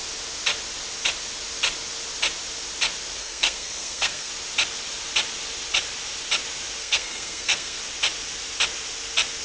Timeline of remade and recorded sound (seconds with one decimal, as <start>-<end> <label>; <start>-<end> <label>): 0.0-3.2 recorded; 3.2-4.3 remade; 4.3-6.8 recorded; 6.8-7.8 remade; 7.8-9.4 recorded